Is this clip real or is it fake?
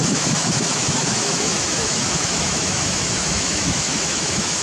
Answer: fake